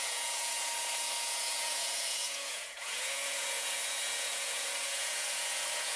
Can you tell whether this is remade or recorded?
remade